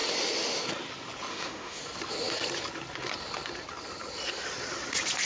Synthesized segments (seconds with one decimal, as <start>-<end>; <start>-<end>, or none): 1.3-1.8